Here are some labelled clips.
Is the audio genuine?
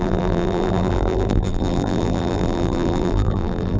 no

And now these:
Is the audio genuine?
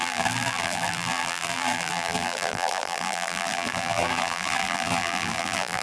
no